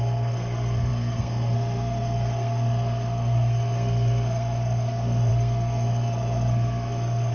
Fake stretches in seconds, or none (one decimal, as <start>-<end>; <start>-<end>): 0.0-7.3